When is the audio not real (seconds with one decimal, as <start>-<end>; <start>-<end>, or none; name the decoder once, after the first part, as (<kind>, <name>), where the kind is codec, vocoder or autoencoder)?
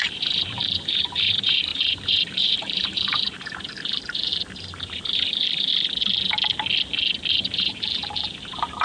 0.0-5.7 (vocoder, BigVGAN v2); 7.3-8.8